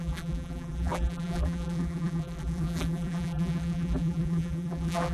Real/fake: fake